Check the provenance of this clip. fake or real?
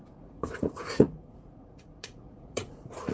fake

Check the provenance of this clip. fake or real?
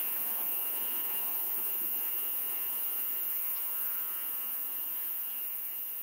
fake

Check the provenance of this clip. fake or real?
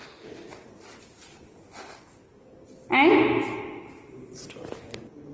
real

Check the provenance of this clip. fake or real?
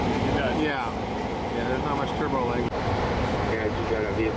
real